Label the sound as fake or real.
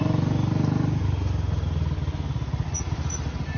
real